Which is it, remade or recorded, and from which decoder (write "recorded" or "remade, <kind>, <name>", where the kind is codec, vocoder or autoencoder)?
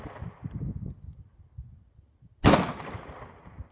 recorded